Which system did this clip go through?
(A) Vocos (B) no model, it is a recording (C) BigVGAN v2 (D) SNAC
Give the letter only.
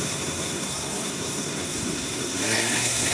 D